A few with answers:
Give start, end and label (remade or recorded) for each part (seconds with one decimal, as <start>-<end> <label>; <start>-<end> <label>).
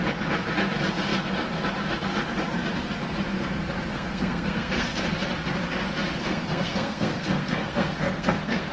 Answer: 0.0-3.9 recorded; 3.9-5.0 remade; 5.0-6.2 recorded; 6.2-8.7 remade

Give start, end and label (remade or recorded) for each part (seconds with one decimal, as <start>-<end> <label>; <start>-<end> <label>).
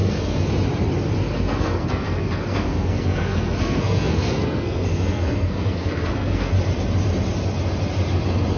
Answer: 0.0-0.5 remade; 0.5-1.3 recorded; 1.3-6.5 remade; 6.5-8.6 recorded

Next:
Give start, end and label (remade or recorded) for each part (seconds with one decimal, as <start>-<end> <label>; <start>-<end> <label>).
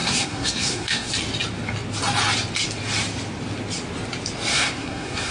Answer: 0.0-1.1 remade; 1.1-4.5 recorded; 4.5-5.3 remade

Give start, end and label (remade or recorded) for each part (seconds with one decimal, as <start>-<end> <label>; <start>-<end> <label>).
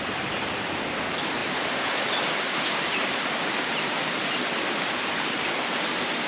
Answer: 0.0-6.3 recorded